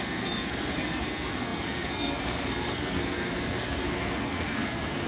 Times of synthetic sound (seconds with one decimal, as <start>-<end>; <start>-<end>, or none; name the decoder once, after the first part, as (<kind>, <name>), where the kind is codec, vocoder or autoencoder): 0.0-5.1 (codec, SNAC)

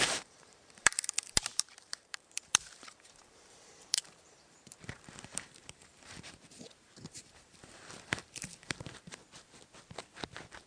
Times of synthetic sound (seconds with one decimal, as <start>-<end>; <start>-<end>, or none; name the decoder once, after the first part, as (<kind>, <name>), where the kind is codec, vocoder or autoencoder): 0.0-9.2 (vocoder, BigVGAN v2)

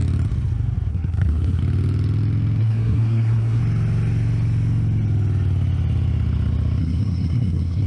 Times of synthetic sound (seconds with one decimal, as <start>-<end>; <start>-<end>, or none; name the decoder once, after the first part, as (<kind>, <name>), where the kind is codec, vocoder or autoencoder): 0.9-1.6 (codec, SNAC); 2.6-3.6; 6.8-7.9

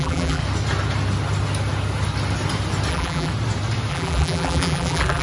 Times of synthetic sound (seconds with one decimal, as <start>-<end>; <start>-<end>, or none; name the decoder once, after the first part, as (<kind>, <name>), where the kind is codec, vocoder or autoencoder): 0.0-0.4 (vocoder, BigVGAN v2); 2.9-3.3; 3.9-5.2

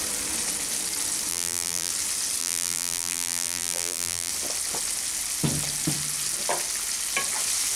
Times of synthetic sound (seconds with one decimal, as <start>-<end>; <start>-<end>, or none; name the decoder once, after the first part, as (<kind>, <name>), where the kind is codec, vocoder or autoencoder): 1.3-1.9 (vocoder, BigVGAN v2); 2.4-4.3

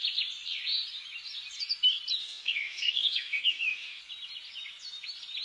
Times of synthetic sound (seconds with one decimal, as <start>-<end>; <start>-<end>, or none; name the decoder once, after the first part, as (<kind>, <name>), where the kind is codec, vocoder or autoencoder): 2.2-4.0 (codec, DAC)

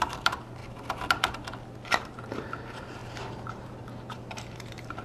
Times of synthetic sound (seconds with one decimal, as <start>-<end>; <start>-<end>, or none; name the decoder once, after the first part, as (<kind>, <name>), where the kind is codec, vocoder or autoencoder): 0.0-0.6 (vocoder, BigVGAN v2); 1.9-3.0; 3.5-5.0

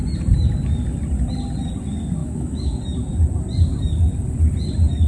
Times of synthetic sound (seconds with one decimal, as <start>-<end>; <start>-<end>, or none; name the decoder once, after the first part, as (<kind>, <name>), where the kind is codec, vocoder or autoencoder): 2.2-2.8 (autoencoder, DAC-VAE)